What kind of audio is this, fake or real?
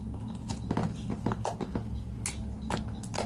real